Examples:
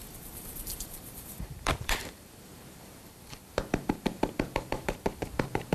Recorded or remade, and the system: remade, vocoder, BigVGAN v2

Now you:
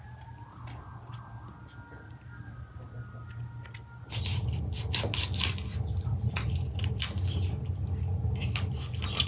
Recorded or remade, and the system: recorded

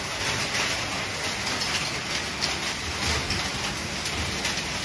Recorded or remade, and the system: recorded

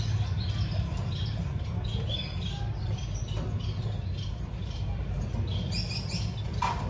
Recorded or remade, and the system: recorded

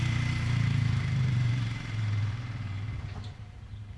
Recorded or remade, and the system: remade, vocoder, BigVGAN v2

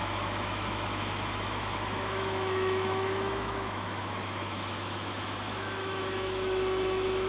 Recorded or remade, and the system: remade, autoencoder, DAC-VAE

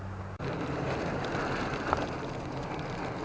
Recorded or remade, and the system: recorded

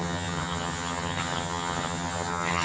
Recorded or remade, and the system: remade, vocoder, HiFi-GAN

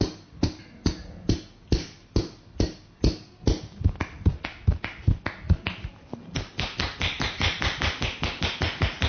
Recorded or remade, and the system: recorded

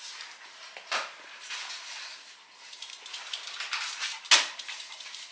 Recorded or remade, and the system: recorded